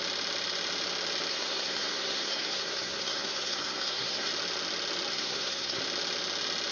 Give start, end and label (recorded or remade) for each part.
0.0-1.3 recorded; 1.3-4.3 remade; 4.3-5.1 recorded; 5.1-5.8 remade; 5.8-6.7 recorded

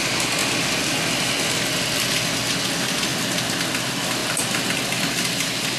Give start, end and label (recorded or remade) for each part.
0.0-5.8 recorded

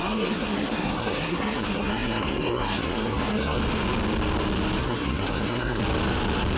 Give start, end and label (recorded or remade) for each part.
0.0-3.6 remade; 3.6-4.8 recorded; 4.8-5.8 remade; 5.8-6.6 recorded